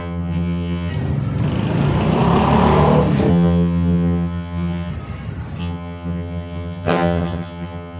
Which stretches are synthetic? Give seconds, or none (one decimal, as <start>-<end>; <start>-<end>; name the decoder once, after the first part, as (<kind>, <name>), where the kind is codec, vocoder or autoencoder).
0.0-0.9 (vocoder, HiFi-GAN); 3.3-4.9; 5.6-8.0